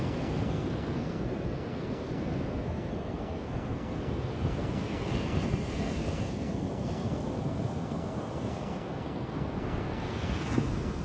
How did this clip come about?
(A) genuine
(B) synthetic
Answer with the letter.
B